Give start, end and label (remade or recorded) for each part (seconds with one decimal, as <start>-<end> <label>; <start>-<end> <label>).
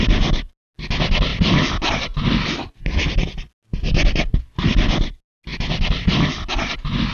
0.0-1.3 recorded; 1.3-1.9 remade; 1.9-5.5 recorded; 5.5-6.5 remade; 6.5-7.1 recorded